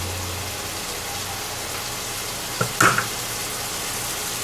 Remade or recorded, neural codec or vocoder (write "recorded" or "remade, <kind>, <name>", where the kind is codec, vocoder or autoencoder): recorded